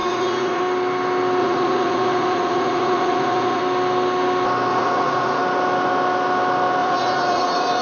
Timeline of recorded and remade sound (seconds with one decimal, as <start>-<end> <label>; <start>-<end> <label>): 0.0-0.6 remade; 0.6-1.4 recorded; 1.4-3.6 remade; 3.6-4.7 recorded; 4.7-5.4 remade; 5.4-6.8 recorded; 6.8-7.8 remade